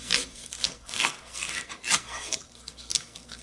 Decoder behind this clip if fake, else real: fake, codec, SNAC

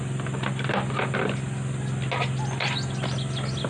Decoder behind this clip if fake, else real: real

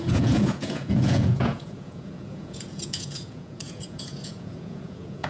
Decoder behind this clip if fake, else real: fake, vocoder, Vocos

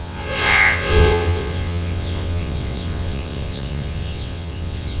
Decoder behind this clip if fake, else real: fake, vocoder, WaveNeXt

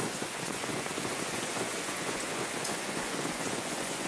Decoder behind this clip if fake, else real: fake, vocoder, Vocos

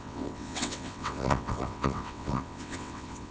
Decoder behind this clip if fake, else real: fake, vocoder, WaveNeXt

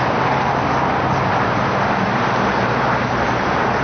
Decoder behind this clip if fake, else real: real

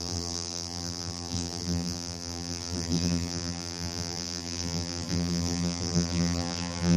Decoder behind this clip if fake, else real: fake, vocoder, BigVGAN v2